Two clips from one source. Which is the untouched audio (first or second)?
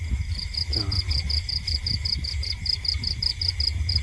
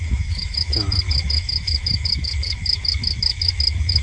first